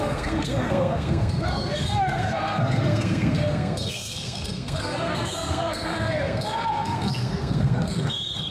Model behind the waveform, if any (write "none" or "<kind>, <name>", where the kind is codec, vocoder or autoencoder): codec, SNAC